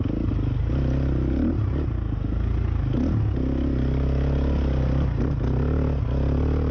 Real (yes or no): yes